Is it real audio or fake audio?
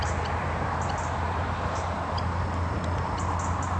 real